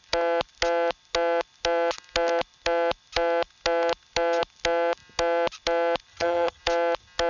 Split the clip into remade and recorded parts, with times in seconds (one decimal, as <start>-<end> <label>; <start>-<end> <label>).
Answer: 0.0-6.1 recorded; 6.1-6.6 remade; 6.6-7.3 recorded